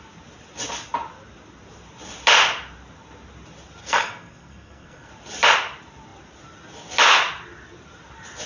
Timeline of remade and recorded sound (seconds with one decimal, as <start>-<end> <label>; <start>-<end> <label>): 0.0-3.8 recorded; 3.8-5.1 remade; 5.1-8.5 recorded